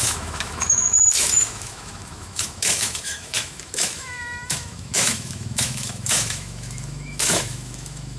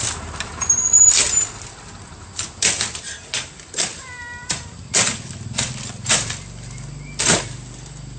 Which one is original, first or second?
second